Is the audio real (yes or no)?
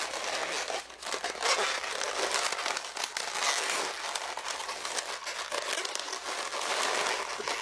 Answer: yes